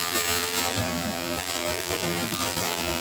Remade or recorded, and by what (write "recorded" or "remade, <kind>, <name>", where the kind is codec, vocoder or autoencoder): remade, vocoder, BigVGAN v2